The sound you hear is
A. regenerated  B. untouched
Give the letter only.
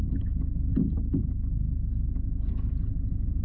B